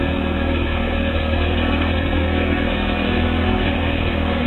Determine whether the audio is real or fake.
fake